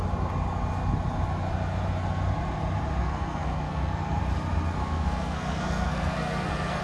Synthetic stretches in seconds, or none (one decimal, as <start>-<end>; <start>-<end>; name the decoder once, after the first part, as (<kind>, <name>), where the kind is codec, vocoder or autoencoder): 3.0-4.2 (codec, SNAC); 4.8-6.8